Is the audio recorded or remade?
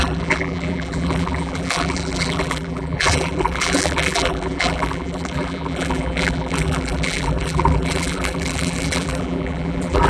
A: remade